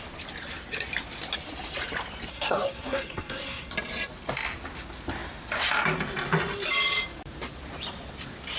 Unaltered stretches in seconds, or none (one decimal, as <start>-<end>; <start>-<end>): 0.0-2.3; 3.7-8.6